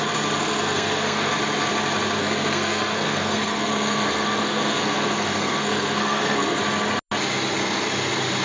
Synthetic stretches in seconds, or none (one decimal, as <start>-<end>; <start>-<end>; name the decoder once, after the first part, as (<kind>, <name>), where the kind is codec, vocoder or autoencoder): 0.4-1.3 (codec, SNAC); 2.2-6.6